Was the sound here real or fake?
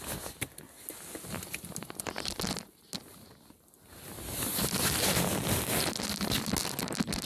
real